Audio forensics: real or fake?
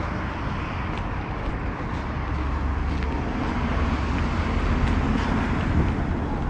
real